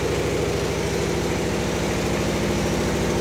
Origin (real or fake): real